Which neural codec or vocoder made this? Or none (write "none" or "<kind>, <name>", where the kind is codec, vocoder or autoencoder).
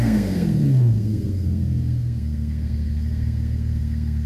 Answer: codec, SNAC